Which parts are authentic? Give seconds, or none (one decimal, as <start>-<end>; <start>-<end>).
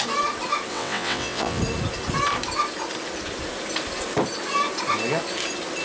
0.0-0.7; 1.6-5.8